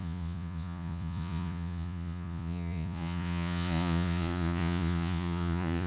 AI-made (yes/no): yes